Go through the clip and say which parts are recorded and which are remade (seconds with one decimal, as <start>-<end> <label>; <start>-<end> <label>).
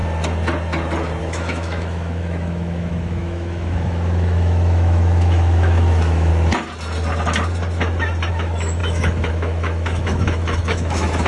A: 0.0-1.2 recorded; 1.2-6.3 remade; 6.3-8.3 recorded; 8.3-11.3 remade